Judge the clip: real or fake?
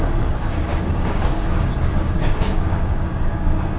fake